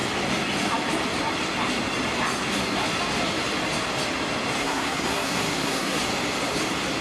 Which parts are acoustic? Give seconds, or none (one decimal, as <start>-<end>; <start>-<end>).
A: 0.0-4.6; 6.0-7.0